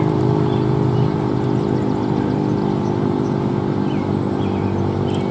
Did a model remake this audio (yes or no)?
no